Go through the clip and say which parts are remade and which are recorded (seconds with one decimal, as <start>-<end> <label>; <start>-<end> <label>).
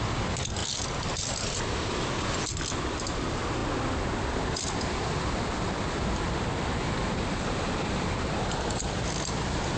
0.0-9.8 recorded